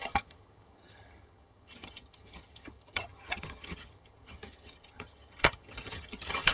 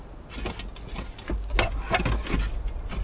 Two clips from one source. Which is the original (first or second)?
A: second